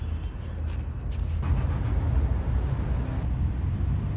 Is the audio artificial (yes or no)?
no